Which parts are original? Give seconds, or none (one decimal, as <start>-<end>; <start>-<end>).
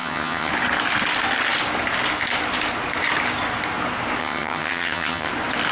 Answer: 0.5-4.2; 5.3-5.7